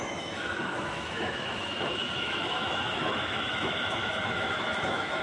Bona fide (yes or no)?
no